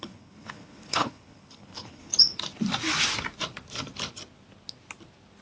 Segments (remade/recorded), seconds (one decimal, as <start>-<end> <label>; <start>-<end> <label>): 0.0-2.1 remade; 2.1-5.4 recorded